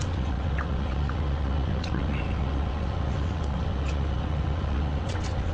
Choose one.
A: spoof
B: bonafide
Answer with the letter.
A